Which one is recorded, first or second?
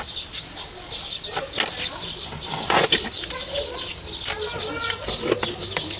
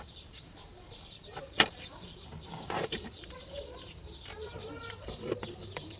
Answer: first